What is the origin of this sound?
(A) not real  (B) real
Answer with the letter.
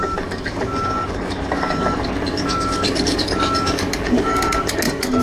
A